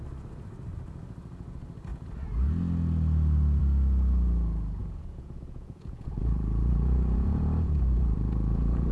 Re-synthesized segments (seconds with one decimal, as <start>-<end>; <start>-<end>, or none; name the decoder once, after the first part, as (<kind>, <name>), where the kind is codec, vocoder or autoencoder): 4.8-8.9 (vocoder, Vocos)